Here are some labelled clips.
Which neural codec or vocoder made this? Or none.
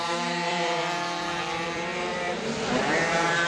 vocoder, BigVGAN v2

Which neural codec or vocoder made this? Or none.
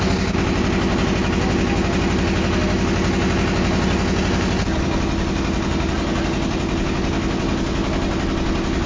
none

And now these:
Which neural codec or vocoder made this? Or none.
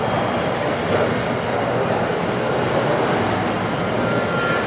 none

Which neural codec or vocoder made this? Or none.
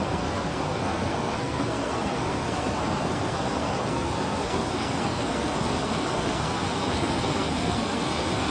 codec, SNAC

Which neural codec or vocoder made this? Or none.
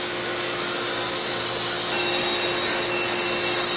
none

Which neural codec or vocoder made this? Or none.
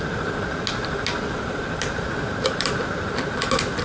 none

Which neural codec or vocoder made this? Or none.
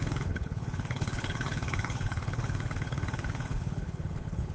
codec, HILCodec